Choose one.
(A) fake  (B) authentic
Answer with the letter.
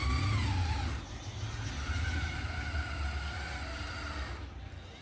B